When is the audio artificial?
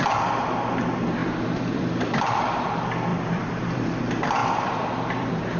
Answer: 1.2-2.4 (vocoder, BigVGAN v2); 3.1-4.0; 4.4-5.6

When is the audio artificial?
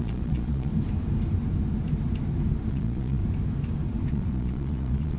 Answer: 0.0-0.7 (vocoder, Vocos); 2.7-3.2; 4.1-5.2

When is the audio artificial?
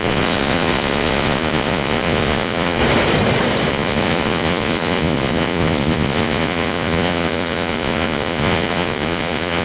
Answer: 0.0-2.8 (vocoder, Vocos); 3.7-9.6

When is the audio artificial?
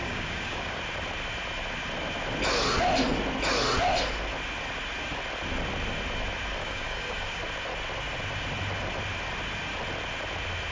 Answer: 0.0-0.8 (codec, DAC); 6.6-7.4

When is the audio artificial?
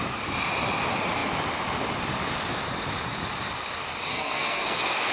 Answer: 4.1-5.1 (codec, SNAC)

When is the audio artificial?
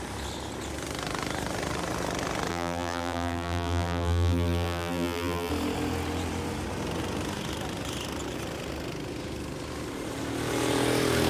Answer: 2.5-5.5 (vocoder, BigVGAN v2)